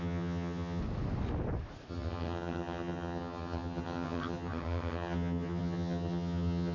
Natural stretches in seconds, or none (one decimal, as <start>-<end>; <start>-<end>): 0.8-1.9